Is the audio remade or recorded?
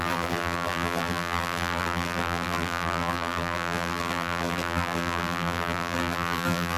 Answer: remade